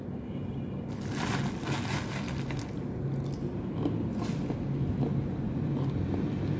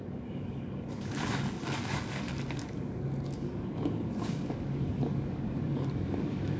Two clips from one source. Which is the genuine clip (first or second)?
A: first